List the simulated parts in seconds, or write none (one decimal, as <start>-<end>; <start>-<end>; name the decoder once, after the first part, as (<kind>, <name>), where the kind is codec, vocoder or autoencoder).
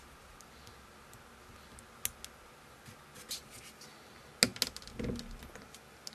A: none